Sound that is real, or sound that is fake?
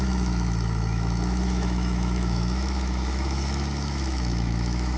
fake